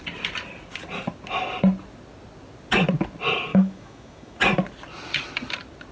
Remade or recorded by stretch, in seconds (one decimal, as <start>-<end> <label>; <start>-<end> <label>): 0.0-3.5 recorded; 3.5-4.4 remade; 4.4-5.9 recorded